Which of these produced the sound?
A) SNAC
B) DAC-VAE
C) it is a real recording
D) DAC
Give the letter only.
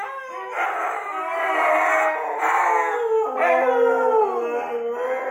C